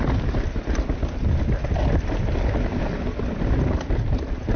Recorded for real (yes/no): yes